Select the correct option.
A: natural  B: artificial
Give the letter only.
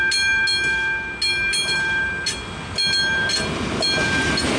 A